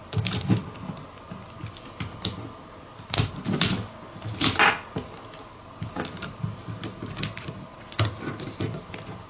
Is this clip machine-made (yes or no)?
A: no